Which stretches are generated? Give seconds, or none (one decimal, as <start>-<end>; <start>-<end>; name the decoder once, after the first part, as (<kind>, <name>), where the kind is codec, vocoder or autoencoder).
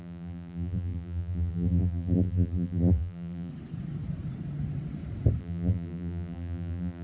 0.0-3.5 (vocoder, BigVGAN v2); 5.4-7.0